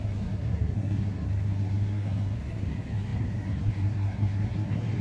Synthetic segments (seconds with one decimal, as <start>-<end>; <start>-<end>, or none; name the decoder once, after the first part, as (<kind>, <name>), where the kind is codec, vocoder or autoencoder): 0.0-5.0 (codec, SNAC)